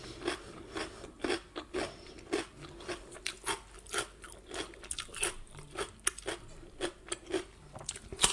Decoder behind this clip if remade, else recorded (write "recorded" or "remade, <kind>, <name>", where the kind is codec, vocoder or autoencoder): recorded